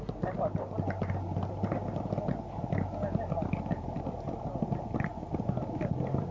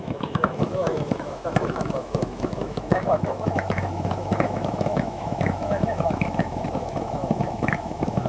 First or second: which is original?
first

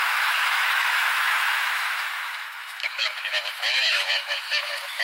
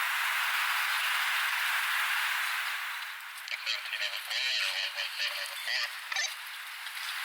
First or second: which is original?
second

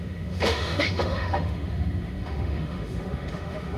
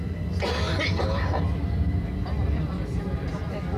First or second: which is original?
second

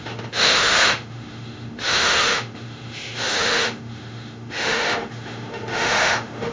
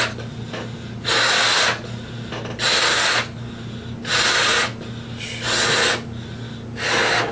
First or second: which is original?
second